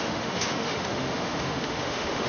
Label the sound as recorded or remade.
remade